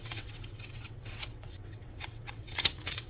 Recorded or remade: remade